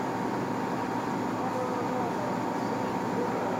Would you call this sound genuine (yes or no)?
yes